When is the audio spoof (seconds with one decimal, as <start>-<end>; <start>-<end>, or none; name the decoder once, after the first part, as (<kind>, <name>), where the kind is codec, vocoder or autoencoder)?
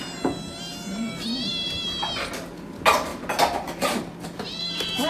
none